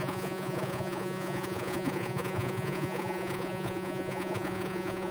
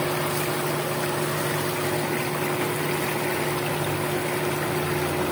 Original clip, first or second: second